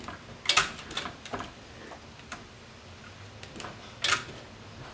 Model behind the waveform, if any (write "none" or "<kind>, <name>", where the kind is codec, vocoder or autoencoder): none